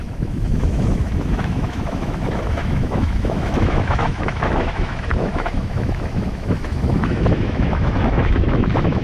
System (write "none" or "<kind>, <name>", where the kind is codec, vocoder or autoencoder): autoencoder, DAC-VAE